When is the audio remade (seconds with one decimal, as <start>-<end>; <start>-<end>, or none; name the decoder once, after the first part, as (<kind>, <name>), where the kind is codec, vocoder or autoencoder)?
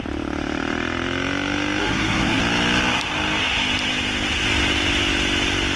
1.8-2.4 (codec, SNAC)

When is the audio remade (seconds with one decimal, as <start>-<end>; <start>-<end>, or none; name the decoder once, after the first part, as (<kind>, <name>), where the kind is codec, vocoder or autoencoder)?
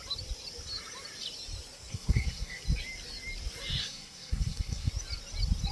1.9-2.6 (codec, SNAC); 3.8-4.9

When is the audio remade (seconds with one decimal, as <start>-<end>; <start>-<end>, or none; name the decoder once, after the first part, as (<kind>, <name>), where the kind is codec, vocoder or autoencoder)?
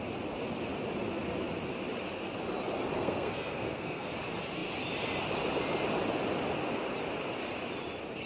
3.0-4.1 (codec, SNAC)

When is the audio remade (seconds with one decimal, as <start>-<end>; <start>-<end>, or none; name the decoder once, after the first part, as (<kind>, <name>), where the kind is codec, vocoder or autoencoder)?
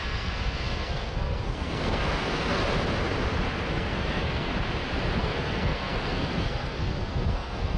0.0-2.6 (codec, SNAC); 3.7-4.5; 5.2-7.8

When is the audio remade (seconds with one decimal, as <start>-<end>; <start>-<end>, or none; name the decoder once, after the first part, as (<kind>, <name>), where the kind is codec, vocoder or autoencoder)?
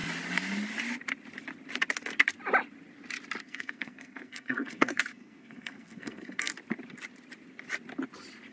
3.4-6.5 (codec, SNAC)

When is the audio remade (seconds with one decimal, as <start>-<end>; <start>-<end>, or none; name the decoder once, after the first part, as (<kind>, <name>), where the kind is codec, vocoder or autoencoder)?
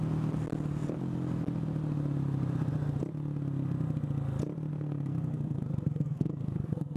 4.7-7.0 (codec, SNAC)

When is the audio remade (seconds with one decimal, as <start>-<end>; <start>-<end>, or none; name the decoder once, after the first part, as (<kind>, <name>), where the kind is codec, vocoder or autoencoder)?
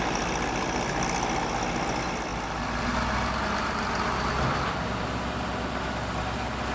none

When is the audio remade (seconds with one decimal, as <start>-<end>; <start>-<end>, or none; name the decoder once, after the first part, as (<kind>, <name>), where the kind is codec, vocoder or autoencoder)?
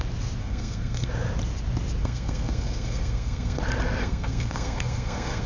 0.4-1.1 (codec, SNAC); 2.0-3.6; 4.0-5.5